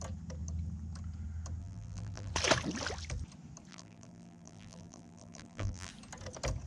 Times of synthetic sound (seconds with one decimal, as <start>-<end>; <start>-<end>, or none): 1.6-2.3; 3.7-5.9